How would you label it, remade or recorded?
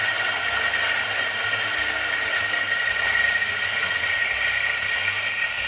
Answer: recorded